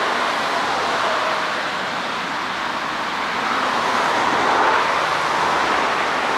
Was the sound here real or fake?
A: real